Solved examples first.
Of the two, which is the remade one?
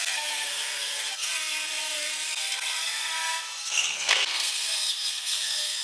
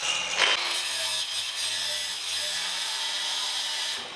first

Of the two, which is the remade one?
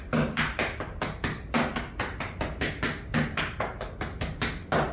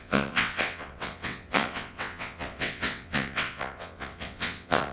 second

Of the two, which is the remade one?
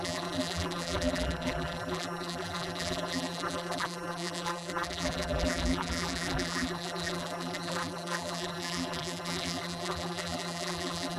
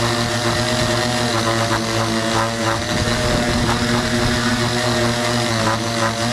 first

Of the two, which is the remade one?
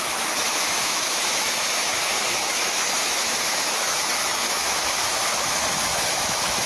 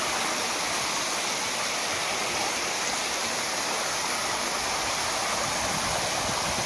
first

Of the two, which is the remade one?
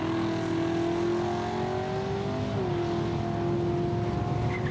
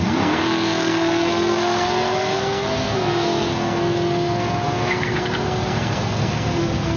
second